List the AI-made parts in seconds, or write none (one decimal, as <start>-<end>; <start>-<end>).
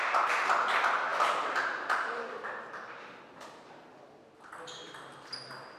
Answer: none